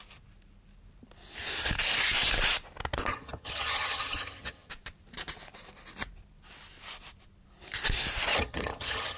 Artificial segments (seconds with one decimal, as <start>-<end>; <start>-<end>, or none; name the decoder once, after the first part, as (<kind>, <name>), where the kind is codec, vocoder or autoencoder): 3.1-4.7 (vocoder, HiFi-GAN); 8.3-9.2